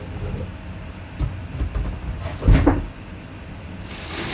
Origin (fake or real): real